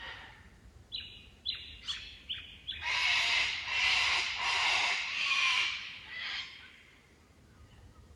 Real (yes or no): yes